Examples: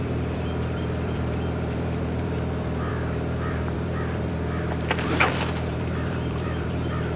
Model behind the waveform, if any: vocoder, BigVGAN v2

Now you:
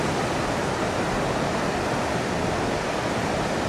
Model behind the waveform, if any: none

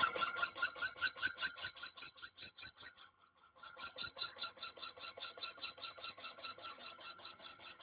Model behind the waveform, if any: vocoder, HiFi-GAN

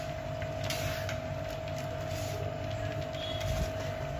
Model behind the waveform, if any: none